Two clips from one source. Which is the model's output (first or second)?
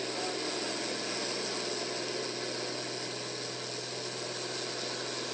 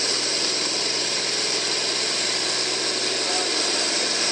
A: second